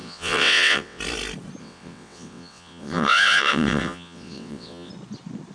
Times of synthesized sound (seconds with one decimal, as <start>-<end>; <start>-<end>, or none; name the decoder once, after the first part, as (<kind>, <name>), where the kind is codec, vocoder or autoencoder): 0.0-1.0 (vocoder, WaveNeXt); 1.6-4.9